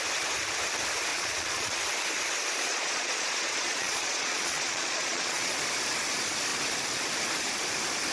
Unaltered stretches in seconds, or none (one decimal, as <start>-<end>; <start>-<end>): 0.0-1.1; 1.8-2.7; 5.5-8.1